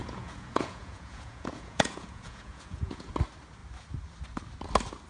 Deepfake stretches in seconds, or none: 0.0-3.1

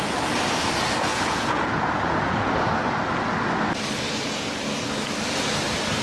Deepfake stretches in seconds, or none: 1.1-2.5

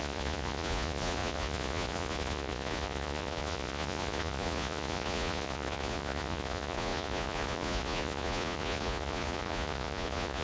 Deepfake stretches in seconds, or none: 0.0-10.4